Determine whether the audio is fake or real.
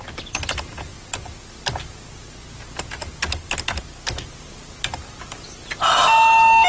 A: real